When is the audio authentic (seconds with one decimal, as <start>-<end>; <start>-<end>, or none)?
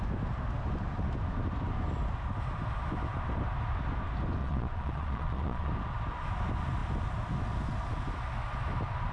0.0-4.4; 5.7-9.1